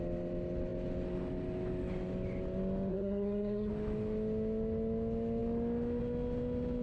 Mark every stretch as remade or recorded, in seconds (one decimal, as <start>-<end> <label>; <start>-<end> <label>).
0.0-2.9 recorded; 2.9-3.7 remade; 3.7-6.8 recorded